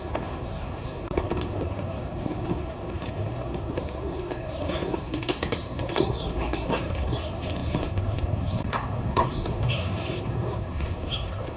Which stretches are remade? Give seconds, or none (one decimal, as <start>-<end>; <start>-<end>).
0.0-11.6